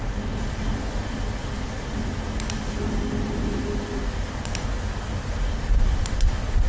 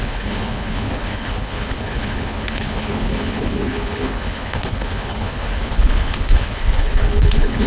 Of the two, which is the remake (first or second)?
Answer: second